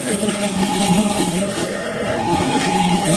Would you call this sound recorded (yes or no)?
no